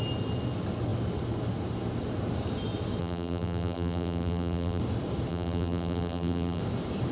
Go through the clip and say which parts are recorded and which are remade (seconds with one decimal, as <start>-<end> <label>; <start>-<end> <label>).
0.0-3.0 recorded; 3.0-4.8 remade; 4.8-5.3 recorded; 5.3-6.6 remade; 6.6-7.1 recorded